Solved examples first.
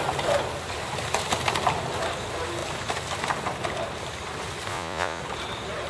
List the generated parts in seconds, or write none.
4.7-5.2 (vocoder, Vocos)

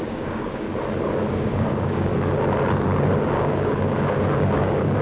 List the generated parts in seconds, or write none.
0.0-0.7 (codec, DAC); 1.3-2.1; 3.0-5.0